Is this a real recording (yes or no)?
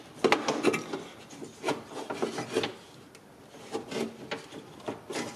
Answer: yes